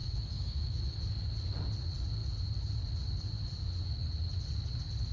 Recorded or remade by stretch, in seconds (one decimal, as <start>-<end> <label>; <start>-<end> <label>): 0.0-0.8 remade; 0.8-5.1 recorded